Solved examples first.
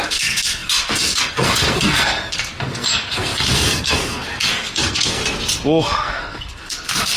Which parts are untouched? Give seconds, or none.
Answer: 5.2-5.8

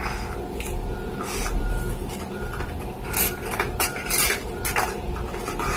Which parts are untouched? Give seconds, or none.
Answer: 0.0-1.1; 4.3-5.8

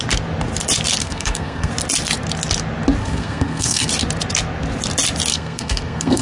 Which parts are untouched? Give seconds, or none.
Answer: 0.0-1.0; 1.7-3.0; 3.9-5.3

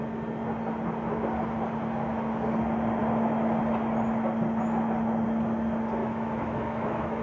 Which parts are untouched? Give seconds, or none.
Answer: 0.0-6.0